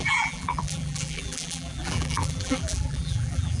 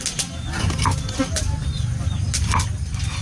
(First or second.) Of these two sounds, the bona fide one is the second